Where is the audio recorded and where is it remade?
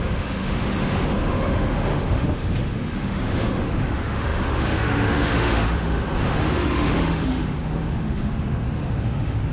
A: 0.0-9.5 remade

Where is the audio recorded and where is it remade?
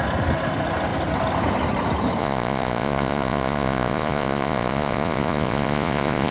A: 0.0-2.2 recorded; 2.2-6.3 remade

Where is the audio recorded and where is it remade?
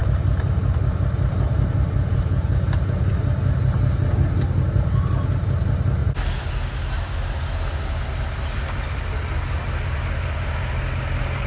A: 0.0-11.5 recorded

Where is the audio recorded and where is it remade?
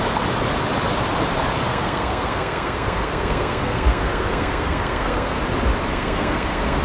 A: 0.0-1.7 recorded; 1.7-5.4 remade; 5.4-5.9 recorded; 5.9-6.8 remade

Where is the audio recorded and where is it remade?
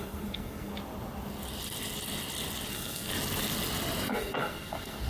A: 0.0-0.7 remade; 0.7-2.7 recorded; 2.7-3.1 remade; 3.1-4.1 recorded; 4.1-5.1 remade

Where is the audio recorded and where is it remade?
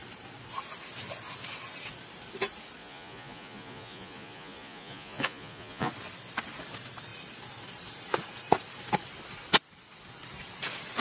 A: 0.0-2.8 recorded; 2.8-5.9 remade; 5.9-11.0 recorded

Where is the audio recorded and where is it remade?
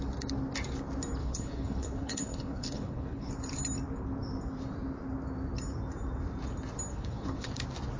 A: 0.0-1.2 recorded; 1.2-3.3 remade; 3.3-6.9 recorded; 6.9-7.5 remade; 7.5-8.0 recorded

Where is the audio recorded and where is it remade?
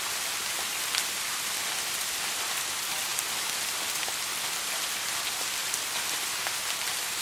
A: 0.0-0.7 recorded; 0.7-2.6 remade; 2.6-3.1 recorded; 3.1-4.0 remade; 4.0-5.6 recorded; 5.6-6.4 remade; 6.4-7.2 recorded